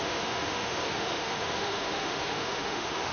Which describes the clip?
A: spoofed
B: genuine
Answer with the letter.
A